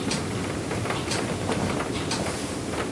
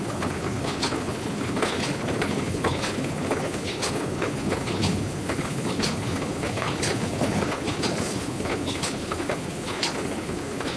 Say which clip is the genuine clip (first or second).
first